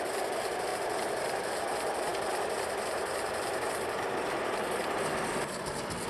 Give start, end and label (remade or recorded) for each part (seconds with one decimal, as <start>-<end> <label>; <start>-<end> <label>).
0.0-0.7 recorded; 0.7-1.6 remade; 1.6-6.1 recorded